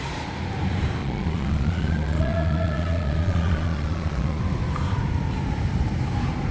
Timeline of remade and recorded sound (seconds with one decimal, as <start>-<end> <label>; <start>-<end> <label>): 0.0-1.0 recorded; 1.0-4.4 remade; 4.4-6.5 recorded